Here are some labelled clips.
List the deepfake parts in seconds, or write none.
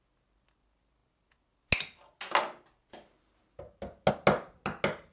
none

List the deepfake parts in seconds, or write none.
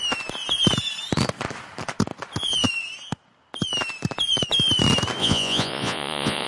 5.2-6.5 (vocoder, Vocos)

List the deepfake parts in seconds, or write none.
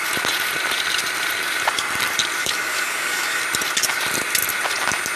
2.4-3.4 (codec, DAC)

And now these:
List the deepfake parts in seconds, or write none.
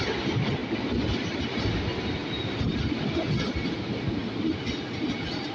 none